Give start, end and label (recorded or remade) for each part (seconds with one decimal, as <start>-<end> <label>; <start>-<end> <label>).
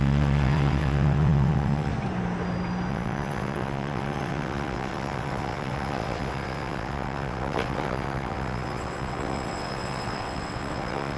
0.0-1.9 remade; 1.9-2.9 recorded; 2.9-11.2 remade